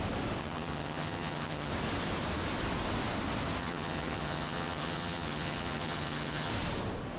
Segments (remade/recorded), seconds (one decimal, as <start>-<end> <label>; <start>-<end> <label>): 0.0-0.4 recorded; 0.4-1.7 remade; 1.7-3.6 recorded; 3.6-6.5 remade; 6.5-7.2 recorded